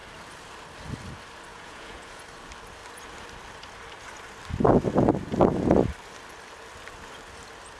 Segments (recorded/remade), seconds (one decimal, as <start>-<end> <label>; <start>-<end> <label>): 0.0-1.5 recorded; 1.5-2.2 remade; 2.2-7.8 recorded